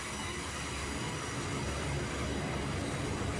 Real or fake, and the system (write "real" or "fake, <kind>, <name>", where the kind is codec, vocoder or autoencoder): real